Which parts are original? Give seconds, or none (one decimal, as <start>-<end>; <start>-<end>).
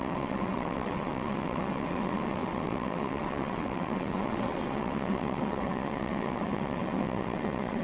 none